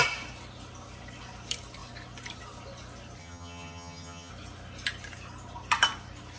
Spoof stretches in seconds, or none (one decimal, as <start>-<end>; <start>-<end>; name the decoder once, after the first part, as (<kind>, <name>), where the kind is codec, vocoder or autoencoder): 3.2-4.3 (vocoder, HiFi-GAN)